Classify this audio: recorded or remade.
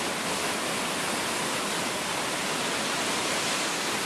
recorded